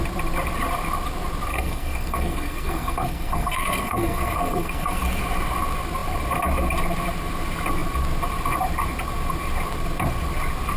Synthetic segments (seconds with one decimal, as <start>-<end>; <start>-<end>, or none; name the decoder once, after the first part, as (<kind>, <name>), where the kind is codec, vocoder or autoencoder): 1.5-5.2 (codec, SNAC)